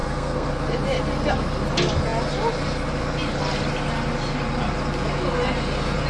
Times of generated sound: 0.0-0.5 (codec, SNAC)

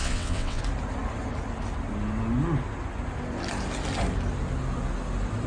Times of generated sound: 0.0-0.6 (vocoder, WaveNeXt)

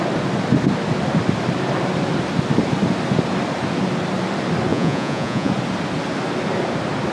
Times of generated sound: 4.7-5.5 (vocoder, Vocos)

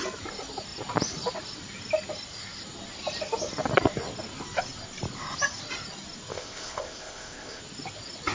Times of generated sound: 6.3-7.6 (codec, ZipCodec)